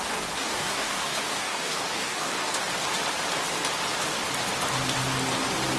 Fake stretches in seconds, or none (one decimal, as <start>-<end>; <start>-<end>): 0.4-2.6